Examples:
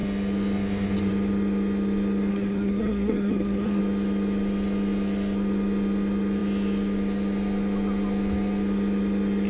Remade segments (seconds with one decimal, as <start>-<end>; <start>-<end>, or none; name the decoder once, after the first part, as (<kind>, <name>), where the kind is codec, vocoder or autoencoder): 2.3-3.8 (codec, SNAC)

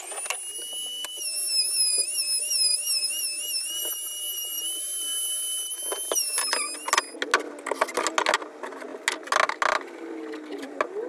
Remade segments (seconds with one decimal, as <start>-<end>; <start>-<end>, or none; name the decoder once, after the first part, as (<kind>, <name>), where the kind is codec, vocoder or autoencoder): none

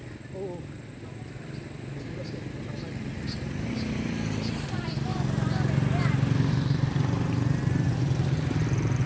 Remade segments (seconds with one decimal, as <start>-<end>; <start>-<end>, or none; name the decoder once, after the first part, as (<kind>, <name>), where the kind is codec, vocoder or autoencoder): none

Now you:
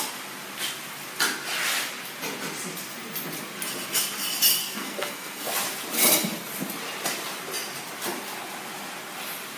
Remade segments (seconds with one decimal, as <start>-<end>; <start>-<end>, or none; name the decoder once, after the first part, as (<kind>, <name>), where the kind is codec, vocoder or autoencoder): 4.6-5.5 (codec, SNAC)

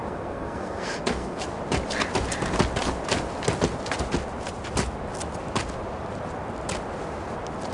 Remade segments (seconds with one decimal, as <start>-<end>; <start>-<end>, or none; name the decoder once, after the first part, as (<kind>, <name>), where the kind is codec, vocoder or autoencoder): 0.0-1.4 (codec, SNAC)

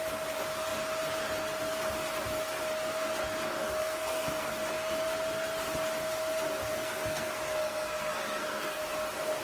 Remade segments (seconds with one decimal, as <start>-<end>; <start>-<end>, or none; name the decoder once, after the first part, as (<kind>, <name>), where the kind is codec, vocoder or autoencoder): 3.6-4.5 (codec, SNAC); 6.7-8.8

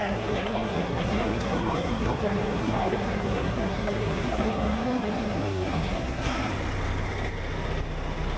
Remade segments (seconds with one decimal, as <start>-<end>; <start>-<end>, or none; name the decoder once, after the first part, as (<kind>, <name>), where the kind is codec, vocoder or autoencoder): 0.0-6.5 (codec, SNAC)

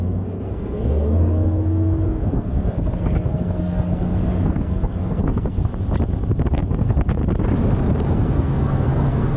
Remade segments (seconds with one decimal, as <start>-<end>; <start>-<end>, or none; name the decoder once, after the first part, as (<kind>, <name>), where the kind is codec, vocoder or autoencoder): 0.0-5.7 (codec, SNAC); 6.5-7.2; 8.1-9.4